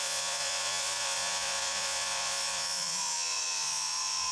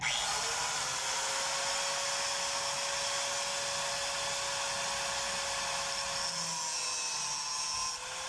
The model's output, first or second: first